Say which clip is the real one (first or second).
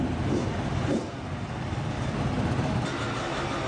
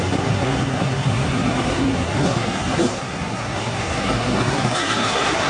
first